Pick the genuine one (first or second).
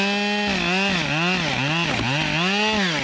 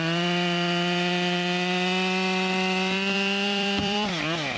first